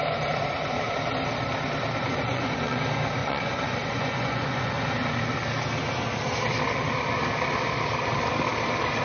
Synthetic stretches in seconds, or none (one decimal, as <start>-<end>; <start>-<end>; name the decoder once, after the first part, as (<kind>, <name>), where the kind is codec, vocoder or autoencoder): 2.0-2.8 (vocoder, Vocos); 3.2-4.7